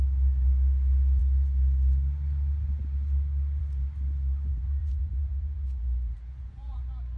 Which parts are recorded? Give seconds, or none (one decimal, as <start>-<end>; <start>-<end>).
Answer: 0.0-4.5; 6.8-7.2